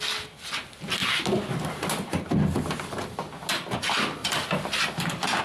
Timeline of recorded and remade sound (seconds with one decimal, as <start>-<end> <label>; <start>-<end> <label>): 0.0-4.2 recorded; 4.2-5.4 remade